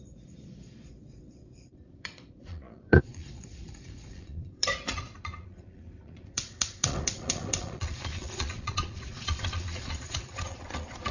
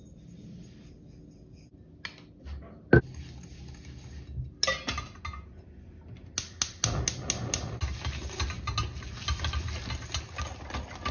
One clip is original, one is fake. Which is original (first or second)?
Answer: second